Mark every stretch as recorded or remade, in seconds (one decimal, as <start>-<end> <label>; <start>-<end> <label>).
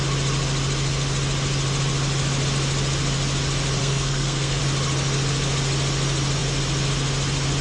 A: 0.0-3.8 recorded; 3.8-4.6 remade; 4.6-7.6 recorded